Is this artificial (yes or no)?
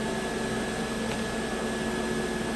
no